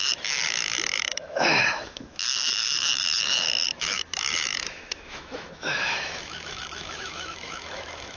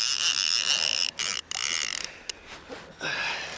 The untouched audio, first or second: second